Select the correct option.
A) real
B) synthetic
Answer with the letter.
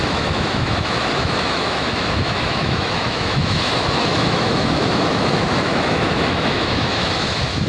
B